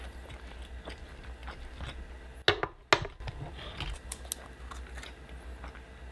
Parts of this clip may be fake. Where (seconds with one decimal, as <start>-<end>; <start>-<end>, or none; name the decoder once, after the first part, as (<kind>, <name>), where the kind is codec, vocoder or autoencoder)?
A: none